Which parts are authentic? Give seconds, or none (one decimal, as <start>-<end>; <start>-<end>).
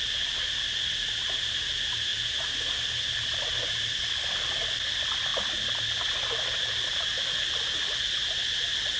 0.0-9.0